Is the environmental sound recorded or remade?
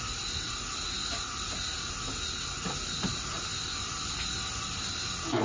recorded